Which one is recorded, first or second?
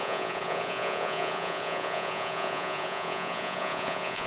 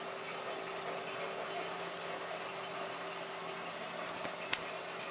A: second